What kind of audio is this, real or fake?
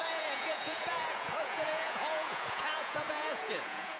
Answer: fake